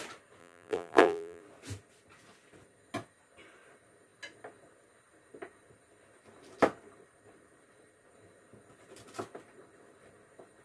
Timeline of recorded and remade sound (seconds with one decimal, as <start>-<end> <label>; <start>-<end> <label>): 0.0-0.4 recorded; 0.4-1.4 remade; 1.4-10.6 recorded